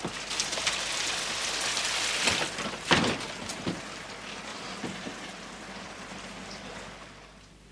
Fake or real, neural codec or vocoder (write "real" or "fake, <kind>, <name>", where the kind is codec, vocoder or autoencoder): real